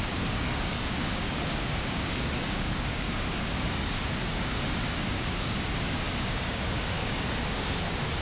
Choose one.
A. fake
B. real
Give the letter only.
A